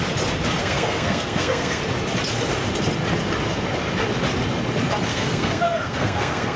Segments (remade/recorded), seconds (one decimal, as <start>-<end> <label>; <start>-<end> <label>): 0.0-0.6 recorded; 0.6-1.8 remade; 1.8-5.1 recorded; 5.1-6.6 remade